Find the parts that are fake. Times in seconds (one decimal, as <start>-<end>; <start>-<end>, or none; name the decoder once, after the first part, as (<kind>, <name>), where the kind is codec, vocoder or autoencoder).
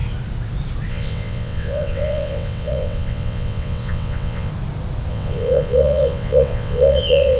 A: 0.9-4.5 (vocoder, WaveNeXt); 5.1-7.4